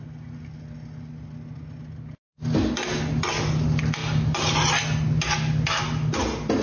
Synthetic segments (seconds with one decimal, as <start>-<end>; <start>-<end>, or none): none